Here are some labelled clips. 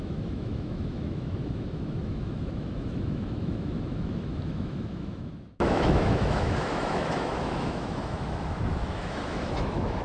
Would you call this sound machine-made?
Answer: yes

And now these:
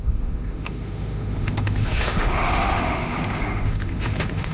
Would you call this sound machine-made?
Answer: yes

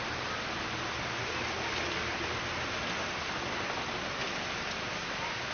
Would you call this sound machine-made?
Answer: no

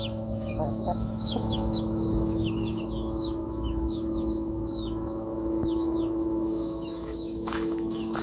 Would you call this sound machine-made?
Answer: yes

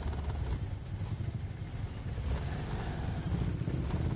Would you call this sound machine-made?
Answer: no